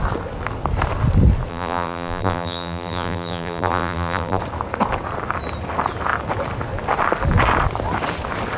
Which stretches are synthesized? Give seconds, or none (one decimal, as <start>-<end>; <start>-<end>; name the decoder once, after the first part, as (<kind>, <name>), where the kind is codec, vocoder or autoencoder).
1.5-4.4 (vocoder, BigVGAN v2)